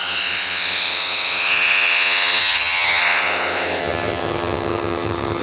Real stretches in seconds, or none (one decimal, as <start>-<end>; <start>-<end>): 0.0-2.4; 3.0-3.8